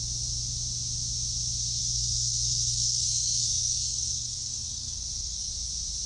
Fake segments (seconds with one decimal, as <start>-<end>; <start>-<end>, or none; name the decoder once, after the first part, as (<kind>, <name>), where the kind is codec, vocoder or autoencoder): 1.8-5.5 (codec, SNAC)